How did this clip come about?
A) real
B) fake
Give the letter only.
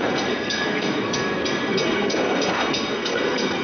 B